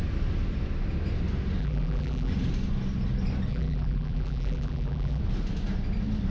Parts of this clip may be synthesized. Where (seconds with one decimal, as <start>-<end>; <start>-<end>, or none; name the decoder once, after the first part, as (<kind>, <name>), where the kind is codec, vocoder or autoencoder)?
1.6-2.3 (vocoder, BigVGAN v2); 3.5-5.2